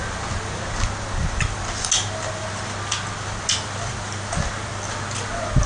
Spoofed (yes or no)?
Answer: no